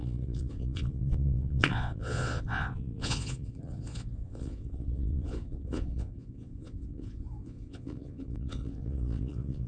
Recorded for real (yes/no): no